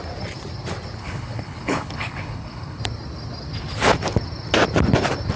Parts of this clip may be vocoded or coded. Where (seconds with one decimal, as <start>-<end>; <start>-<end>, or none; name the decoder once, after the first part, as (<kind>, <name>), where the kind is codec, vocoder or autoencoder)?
1.0-2.8 (codec, HILCodec)